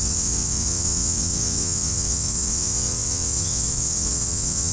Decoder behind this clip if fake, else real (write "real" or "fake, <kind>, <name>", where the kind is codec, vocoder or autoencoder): fake, vocoder, WaveNeXt